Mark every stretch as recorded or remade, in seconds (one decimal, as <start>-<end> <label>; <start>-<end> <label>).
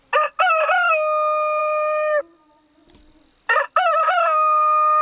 0.0-1.6 recorded; 1.6-2.2 remade; 2.2-2.8 recorded; 2.8-5.0 remade